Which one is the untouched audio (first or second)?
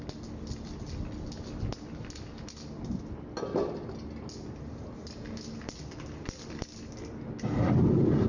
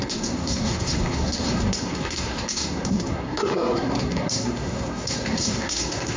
first